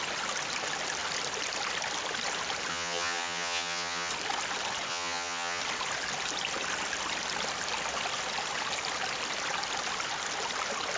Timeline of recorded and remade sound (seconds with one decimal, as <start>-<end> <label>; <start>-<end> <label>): 0.0-2.7 recorded; 2.7-4.1 remade; 4.1-4.9 recorded; 4.9-5.6 remade; 5.6-11.0 recorded